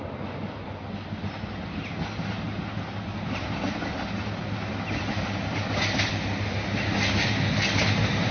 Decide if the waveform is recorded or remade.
recorded